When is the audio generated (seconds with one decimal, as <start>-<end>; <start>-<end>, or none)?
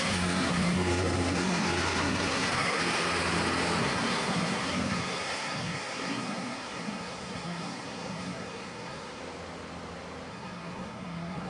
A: 0.0-2.8; 3.8-9.2; 10.3-11.5